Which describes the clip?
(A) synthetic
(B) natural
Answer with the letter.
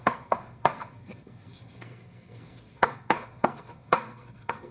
A